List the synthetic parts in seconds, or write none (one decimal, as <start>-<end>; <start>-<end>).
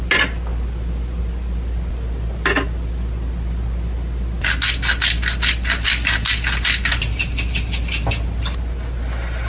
none